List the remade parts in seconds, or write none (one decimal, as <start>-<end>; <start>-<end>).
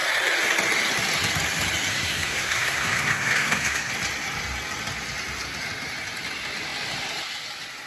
1.9-3.9